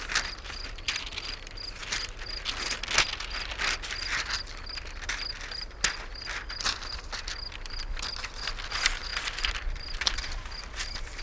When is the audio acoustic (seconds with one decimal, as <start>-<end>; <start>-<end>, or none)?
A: 0.0-11.2